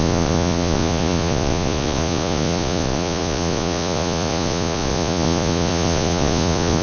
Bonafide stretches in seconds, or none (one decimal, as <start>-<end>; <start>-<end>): none